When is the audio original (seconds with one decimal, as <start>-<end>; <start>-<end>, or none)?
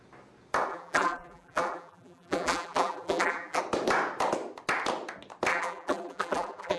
0.0-0.7; 3.6-5.5